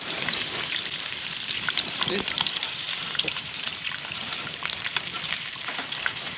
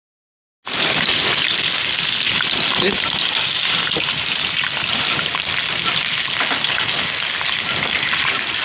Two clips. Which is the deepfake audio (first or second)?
first